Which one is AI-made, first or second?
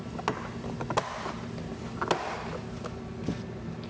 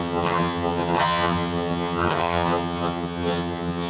second